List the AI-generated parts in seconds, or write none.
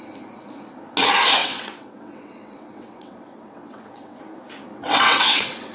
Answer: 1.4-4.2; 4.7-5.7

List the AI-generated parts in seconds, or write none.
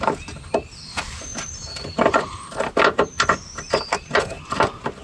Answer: 1.3-2.5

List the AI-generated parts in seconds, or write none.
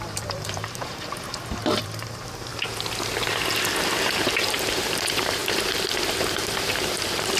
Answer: 0.0-2.5; 3.8-5.4; 6.1-7.4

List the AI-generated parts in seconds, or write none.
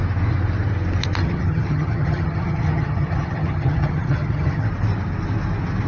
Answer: 1.2-4.7